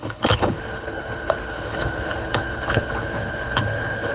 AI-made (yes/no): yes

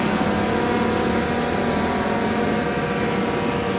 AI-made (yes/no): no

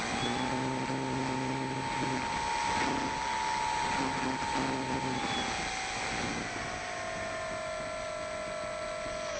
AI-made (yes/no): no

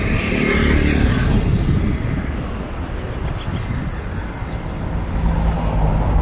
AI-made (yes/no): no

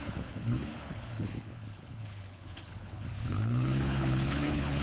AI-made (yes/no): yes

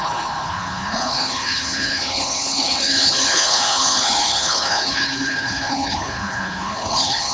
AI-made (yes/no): yes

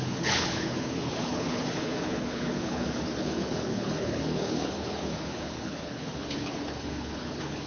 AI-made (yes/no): yes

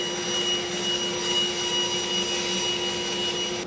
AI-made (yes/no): no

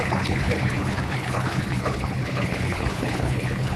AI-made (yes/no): yes